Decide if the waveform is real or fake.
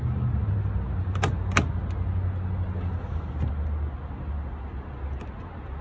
real